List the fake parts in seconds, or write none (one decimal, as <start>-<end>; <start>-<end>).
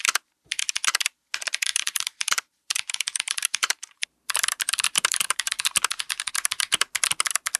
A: 1.7-6.3